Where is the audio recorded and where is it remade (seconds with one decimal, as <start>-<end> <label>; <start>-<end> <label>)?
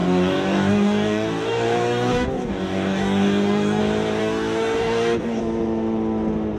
0.0-3.8 remade; 3.8-4.2 recorded; 4.2-5.4 remade; 5.4-6.6 recorded